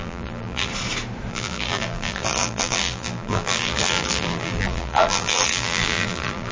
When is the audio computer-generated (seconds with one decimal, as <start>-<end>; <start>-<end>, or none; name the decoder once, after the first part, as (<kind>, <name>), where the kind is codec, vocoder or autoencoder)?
0.0-0.7 (vocoder, BigVGAN v2); 1.3-6.5

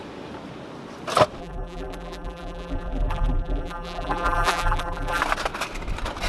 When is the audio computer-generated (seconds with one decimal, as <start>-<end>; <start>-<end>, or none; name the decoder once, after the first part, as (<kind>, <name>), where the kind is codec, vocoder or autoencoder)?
1.4-5.2 (vocoder, BigVGAN v2)

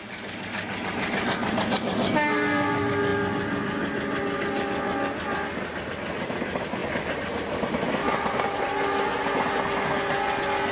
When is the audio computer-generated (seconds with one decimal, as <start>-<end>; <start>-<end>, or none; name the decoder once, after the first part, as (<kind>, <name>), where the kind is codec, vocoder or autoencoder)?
none

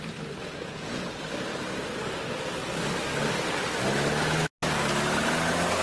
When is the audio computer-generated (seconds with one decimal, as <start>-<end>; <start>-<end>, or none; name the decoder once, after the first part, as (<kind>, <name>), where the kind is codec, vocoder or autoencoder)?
0.4-1.1 (vocoder, Vocos)

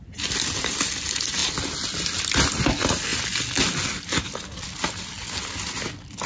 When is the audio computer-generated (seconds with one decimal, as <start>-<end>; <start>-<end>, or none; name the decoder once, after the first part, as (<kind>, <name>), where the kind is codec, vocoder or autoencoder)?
none

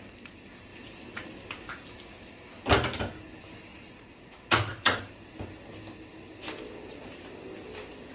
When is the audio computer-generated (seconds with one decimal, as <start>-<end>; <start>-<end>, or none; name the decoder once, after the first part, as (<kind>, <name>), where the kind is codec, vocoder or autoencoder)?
3.7-5.1 (vocoder, Vocos)

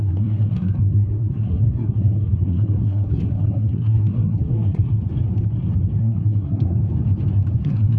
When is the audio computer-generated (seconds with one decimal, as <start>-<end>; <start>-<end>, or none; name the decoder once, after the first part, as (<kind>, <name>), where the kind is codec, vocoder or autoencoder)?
0.0-4.9 (codec, SNAC); 6.0-6.8; 7.6-8.0